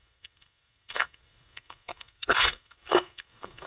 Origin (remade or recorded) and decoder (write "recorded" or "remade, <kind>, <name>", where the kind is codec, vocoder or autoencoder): remade, codec, SNAC